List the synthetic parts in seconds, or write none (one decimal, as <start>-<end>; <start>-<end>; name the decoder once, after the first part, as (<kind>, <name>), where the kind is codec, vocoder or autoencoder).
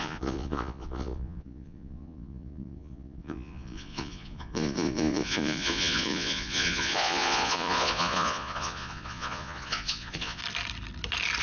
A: 0.0-10.4 (vocoder, Vocos)